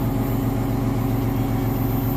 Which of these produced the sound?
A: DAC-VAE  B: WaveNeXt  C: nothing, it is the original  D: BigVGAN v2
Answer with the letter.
C